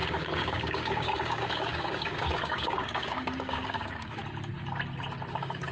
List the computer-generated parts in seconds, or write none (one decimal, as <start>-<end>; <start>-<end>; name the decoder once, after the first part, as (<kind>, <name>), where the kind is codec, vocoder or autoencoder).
0.0-4.2 (codec, DAC); 5.3-5.7